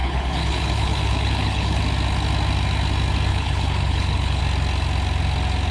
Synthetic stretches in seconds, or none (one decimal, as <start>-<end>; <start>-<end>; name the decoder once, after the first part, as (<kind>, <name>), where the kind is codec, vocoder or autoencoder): 0.0-1.8 (codec, HILCodec); 3.3-4.4